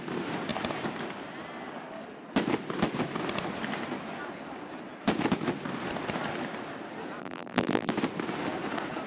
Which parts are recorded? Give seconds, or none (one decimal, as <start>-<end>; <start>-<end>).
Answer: 0.0-7.2; 7.9-9.1